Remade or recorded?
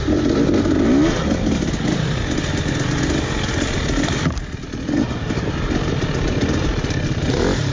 recorded